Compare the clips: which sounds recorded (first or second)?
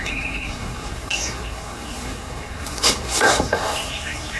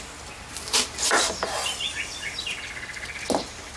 second